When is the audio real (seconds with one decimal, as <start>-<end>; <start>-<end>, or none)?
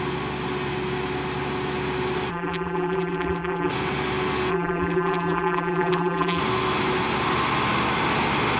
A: 0.0-2.3; 3.7-4.5; 6.4-8.6